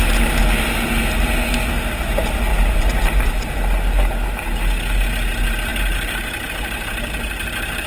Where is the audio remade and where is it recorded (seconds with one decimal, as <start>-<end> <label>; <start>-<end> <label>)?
0.0-2.5 recorded; 2.5-3.3 remade; 3.3-7.9 recorded